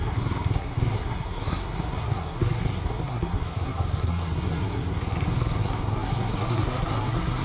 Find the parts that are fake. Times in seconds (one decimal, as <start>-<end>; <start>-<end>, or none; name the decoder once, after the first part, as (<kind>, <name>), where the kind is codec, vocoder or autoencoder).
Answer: 0.0-7.4 (codec, SNAC)